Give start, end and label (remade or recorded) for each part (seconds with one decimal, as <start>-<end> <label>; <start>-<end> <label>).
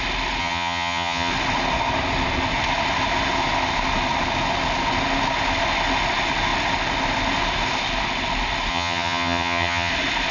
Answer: 0.0-0.4 recorded; 0.4-1.3 remade; 1.3-8.7 recorded; 8.7-9.9 remade; 9.9-10.3 recorded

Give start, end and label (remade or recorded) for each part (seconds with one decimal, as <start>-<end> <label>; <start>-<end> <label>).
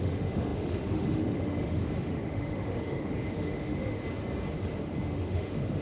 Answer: 0.0-4.0 remade; 4.0-5.0 recorded; 5.0-5.8 remade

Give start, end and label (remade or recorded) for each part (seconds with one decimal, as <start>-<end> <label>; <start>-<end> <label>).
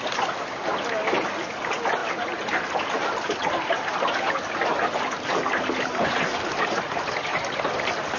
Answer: 0.0-8.2 recorded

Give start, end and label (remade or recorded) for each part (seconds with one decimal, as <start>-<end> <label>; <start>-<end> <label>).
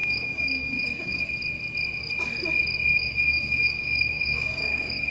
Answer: 0.0-1.3 remade; 1.3-2.9 recorded; 2.9-5.1 remade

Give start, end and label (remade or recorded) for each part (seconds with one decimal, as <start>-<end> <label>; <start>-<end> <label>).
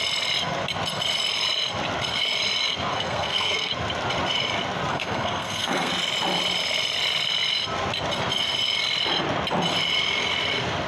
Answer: 0.0-2.9 recorded; 2.9-3.7 remade; 3.7-4.9 recorded; 4.9-5.9 remade; 5.9-10.9 recorded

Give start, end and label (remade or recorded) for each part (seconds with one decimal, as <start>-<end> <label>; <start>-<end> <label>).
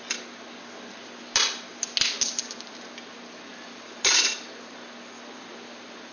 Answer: 0.0-6.1 recorded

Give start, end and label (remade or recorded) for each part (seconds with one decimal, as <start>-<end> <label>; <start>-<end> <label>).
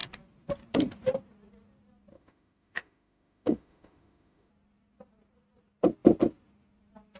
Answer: 0.0-2.1 recorded; 2.1-4.5 remade; 4.5-7.2 recorded